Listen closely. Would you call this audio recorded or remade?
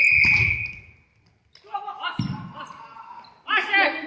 recorded